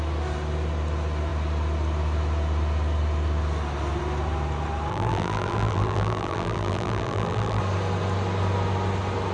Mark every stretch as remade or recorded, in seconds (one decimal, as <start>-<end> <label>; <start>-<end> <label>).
0.0-4.9 recorded; 4.9-7.6 remade; 7.6-9.3 recorded